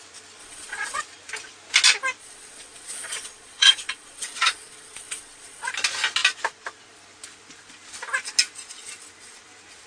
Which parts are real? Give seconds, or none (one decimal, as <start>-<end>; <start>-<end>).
0.0-0.4; 1.0-2.2; 5.7-9.9